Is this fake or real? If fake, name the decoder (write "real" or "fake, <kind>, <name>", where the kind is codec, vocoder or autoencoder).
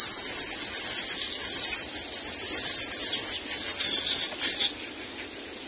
real